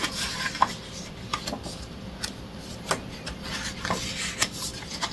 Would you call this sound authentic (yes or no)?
yes